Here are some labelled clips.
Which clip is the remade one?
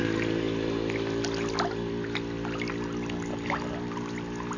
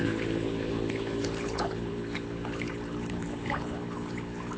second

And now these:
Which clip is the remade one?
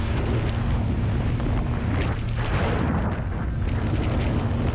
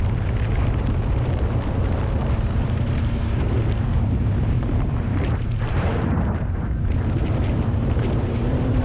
second